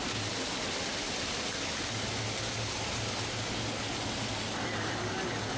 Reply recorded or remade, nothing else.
recorded